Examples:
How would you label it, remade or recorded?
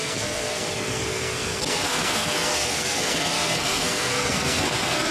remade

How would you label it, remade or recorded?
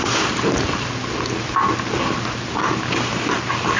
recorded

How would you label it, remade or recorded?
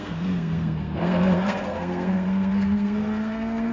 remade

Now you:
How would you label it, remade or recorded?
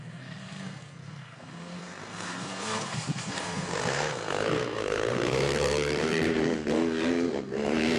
remade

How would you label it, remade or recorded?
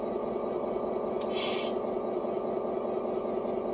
recorded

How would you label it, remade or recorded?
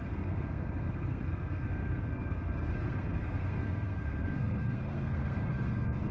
remade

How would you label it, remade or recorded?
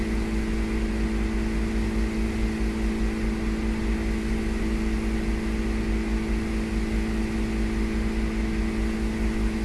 recorded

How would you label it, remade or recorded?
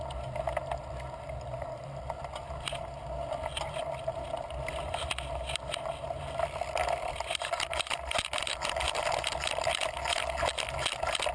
recorded